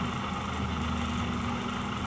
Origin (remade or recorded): recorded